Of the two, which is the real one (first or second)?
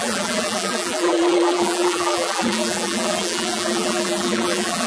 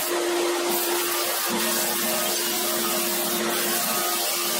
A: second